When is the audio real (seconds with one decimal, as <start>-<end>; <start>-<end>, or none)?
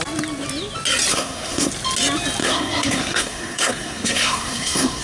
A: 0.0-1.1; 1.7-2.4